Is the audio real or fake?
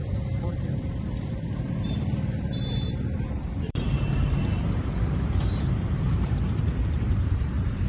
fake